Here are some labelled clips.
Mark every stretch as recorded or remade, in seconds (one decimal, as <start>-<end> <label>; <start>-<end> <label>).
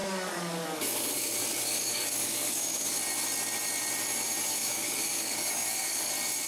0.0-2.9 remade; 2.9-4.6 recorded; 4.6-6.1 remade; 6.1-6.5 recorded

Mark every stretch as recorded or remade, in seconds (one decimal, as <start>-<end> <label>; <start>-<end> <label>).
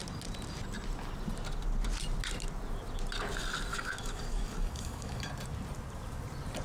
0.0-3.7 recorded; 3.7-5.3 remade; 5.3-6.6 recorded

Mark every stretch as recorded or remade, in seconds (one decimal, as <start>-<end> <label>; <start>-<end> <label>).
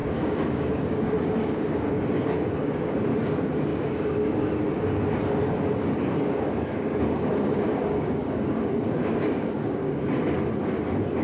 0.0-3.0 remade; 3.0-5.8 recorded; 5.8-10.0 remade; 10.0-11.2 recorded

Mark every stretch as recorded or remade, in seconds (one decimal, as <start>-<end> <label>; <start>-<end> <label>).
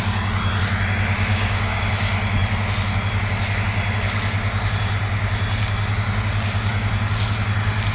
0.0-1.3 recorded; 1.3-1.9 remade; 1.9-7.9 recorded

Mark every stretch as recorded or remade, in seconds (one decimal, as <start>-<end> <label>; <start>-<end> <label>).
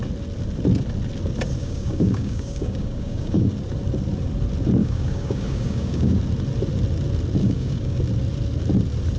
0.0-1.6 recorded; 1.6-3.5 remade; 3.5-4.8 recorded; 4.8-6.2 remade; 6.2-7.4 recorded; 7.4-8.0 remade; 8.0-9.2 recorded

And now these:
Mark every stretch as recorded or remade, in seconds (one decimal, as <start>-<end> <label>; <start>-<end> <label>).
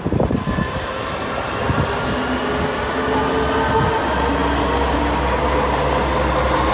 0.0-6.7 recorded